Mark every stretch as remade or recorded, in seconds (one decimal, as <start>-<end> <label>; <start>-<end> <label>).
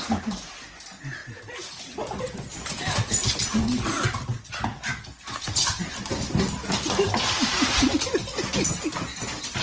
0.0-9.6 recorded